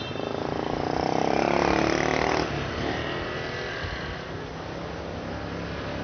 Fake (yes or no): no